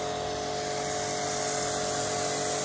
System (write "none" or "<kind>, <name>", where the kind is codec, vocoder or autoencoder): none